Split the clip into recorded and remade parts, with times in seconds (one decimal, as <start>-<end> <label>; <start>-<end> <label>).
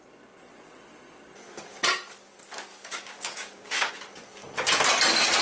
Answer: 0.0-2.7 recorded; 2.7-3.9 remade; 3.9-5.4 recorded